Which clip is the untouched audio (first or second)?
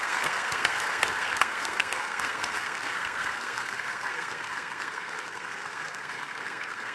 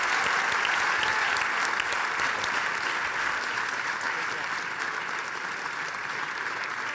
second